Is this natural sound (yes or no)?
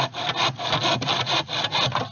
yes